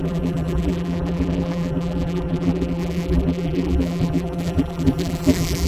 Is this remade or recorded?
remade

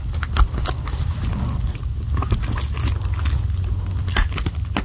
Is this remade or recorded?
recorded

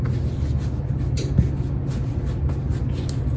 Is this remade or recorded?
recorded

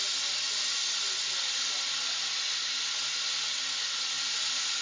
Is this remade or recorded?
recorded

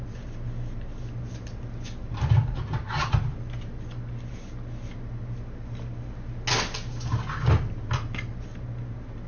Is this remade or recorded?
recorded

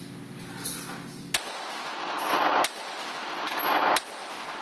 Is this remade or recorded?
recorded